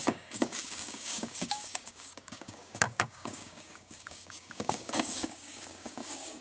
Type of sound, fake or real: fake